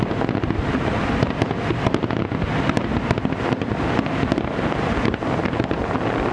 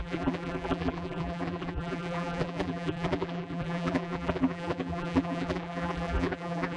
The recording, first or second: first